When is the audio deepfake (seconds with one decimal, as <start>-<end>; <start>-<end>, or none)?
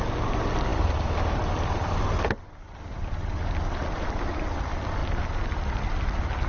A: none